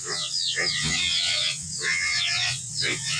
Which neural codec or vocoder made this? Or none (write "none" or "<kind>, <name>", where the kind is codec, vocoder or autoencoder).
vocoder, WaveNeXt